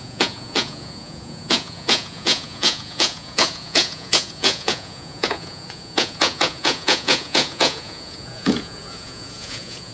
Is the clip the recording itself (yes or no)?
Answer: no